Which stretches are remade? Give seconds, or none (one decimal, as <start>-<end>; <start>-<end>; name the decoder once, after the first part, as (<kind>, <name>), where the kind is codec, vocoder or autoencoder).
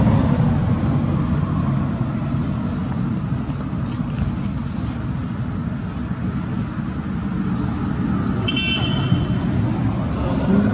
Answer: none